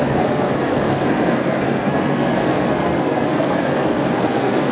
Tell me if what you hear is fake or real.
fake